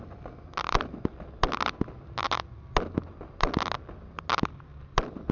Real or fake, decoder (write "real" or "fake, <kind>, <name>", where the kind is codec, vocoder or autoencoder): real